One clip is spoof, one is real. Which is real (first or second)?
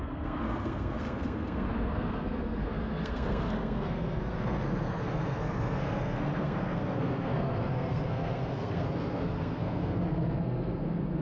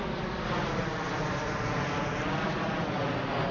second